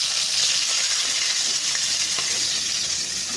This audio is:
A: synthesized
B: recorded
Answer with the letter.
B